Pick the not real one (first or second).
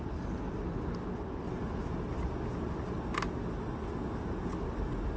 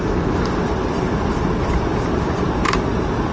second